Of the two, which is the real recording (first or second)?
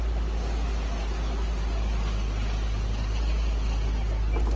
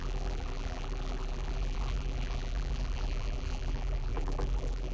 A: first